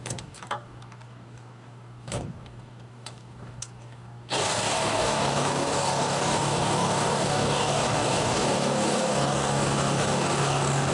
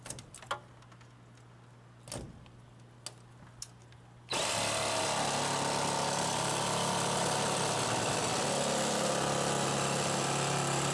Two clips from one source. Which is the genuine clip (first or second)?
second